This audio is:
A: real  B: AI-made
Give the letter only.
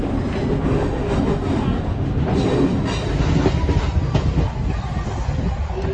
A